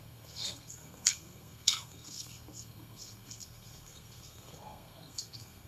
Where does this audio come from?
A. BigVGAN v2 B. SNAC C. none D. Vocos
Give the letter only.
B